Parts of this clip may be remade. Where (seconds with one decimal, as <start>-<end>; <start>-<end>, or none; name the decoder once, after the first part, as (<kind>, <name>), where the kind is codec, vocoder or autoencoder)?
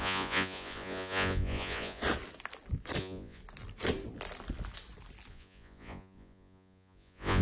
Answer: 0.0-2.0 (vocoder, Vocos); 3.0-3.4; 5.3-7.4